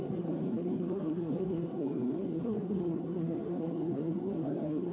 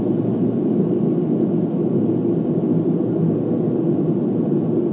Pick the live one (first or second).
second